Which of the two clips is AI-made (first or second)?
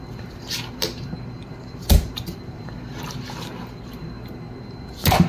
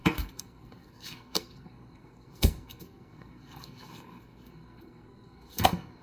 second